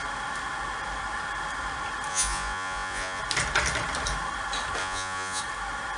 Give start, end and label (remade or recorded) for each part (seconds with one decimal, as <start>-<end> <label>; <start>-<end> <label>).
0.0-2.1 recorded; 2.1-3.2 remade; 3.2-4.8 recorded; 4.8-5.4 remade; 5.4-6.0 recorded